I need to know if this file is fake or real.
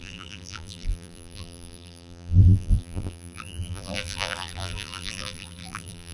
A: fake